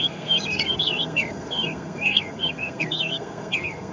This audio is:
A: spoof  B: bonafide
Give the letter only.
A